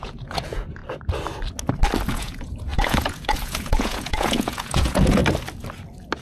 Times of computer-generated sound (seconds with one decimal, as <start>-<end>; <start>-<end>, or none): 0.0-0.8; 2.1-5.2

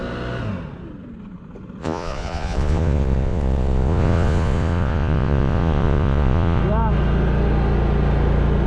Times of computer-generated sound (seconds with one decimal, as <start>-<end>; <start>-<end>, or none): 1.8-6.6

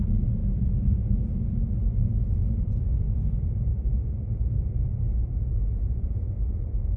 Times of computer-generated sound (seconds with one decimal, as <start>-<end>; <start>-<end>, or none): 0.0-0.4; 2.1-3.7; 4.5-7.0

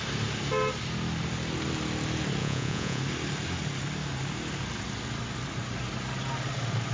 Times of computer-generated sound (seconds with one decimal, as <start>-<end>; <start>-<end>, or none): 2.4-3.0

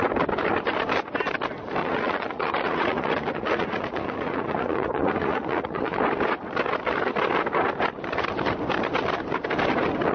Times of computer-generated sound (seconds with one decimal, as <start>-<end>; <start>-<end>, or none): 1.8-6.0